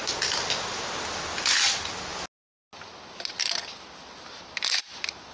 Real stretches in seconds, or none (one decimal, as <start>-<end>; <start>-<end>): 0.0-5.3

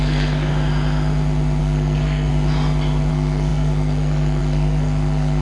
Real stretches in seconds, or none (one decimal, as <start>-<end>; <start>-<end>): 0.5-1.6; 2.3-3.1

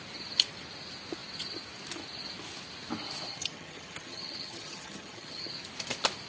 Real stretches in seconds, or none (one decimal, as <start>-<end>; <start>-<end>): 0.0-3.3; 5.5-6.3

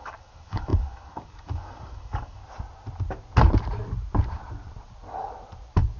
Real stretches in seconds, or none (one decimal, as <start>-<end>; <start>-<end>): 2.4-6.0

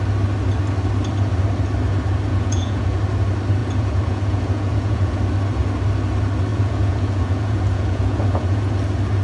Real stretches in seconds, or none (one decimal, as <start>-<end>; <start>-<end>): 0.0-2.3; 3.0-3.6; 5.2-6.5; 8.7-9.2

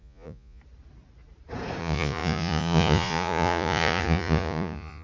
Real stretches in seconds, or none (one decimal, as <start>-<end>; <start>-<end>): 0.6-1.8

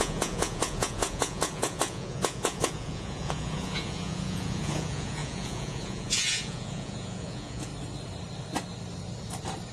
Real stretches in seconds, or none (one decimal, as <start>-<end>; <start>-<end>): 7.7-9.7